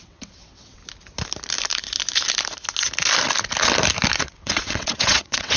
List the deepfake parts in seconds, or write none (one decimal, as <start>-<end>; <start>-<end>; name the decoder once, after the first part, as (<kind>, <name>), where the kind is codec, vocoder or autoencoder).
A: 0.0-0.8 (vocoder, WaveNeXt); 4.2-5.6